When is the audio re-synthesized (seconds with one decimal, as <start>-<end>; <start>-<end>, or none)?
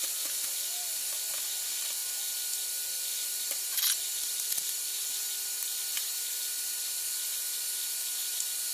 none